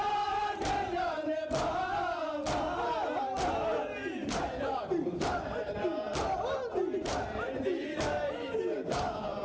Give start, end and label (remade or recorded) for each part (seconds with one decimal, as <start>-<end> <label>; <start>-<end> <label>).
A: 0.0-9.4 recorded